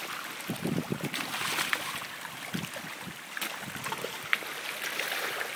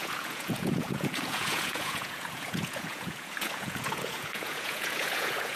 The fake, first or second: second